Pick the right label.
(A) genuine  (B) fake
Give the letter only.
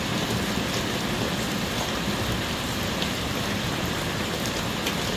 A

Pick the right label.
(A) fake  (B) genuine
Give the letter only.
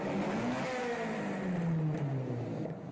B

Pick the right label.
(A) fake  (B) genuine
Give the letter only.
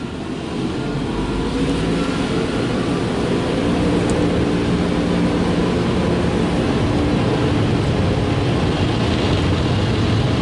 B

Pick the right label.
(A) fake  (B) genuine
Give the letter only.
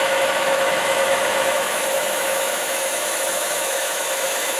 A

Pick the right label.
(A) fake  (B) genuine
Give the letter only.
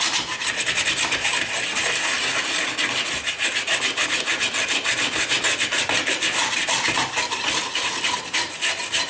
B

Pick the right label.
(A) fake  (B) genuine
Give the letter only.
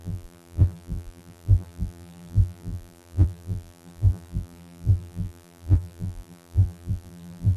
A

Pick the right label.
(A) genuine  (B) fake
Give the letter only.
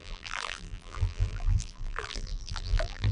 B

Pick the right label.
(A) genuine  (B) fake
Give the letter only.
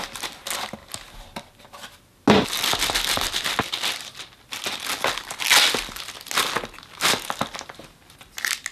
A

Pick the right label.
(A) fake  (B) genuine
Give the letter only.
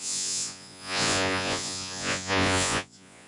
A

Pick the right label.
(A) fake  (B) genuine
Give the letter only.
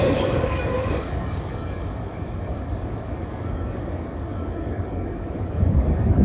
A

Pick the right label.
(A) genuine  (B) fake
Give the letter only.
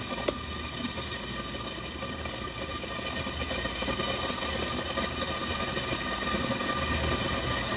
A